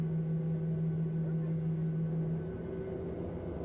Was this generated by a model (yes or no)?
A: no